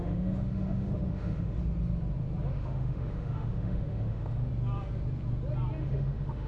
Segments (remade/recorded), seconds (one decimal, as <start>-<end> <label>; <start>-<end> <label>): 0.0-1.6 remade; 1.6-2.5 recorded; 2.5-4.5 remade; 4.5-5.8 recorded; 5.8-6.5 remade